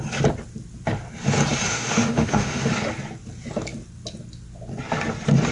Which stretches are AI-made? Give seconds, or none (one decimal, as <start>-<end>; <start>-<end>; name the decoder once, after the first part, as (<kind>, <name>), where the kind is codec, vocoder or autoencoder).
1.7-2.7 (autoencoder, DAC-VAE)